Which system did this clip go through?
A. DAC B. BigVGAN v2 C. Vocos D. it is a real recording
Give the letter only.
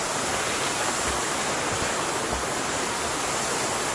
D